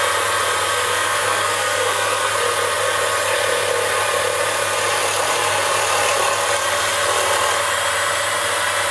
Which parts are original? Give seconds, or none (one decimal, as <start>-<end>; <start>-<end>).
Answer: 0.0-0.9; 2.3-8.9